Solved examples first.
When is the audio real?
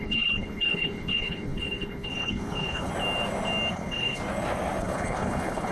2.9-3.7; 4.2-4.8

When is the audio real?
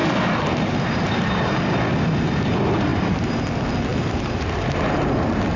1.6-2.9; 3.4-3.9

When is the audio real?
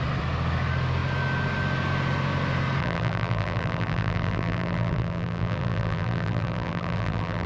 0.0-2.8